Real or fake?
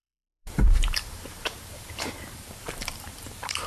fake